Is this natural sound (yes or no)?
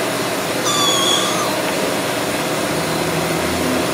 yes